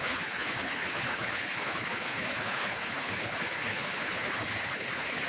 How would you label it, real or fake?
fake